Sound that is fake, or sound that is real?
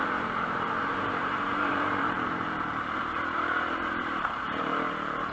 fake